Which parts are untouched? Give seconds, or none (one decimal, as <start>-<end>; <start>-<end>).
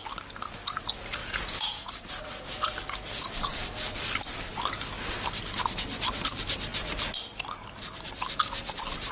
0.0-1.2; 1.9-9.1